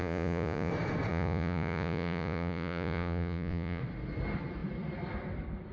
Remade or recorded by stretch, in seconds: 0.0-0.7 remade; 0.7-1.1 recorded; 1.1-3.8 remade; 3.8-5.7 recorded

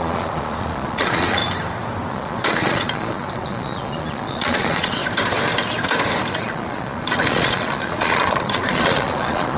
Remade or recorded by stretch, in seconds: 0.0-1.4 remade; 1.4-2.1 recorded; 2.1-5.0 remade; 5.0-6.3 recorded; 6.3-9.6 remade

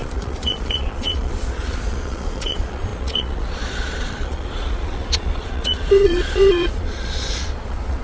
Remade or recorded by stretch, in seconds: 0.0-8.0 remade